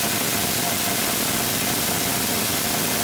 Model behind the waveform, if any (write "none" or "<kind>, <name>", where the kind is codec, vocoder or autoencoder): none